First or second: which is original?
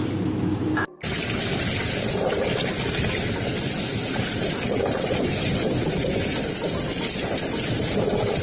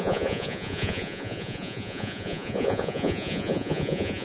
first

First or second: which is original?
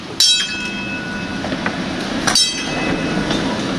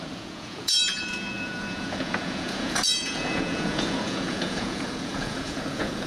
first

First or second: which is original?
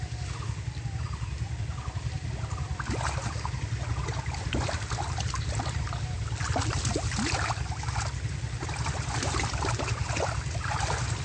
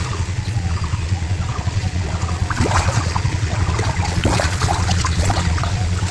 first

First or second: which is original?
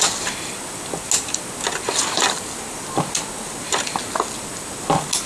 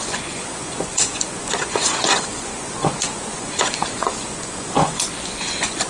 first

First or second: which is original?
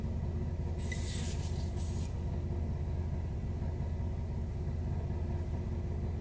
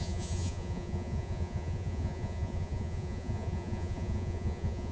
first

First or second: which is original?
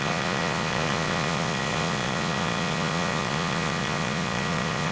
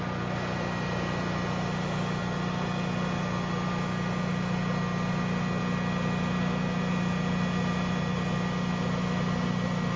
second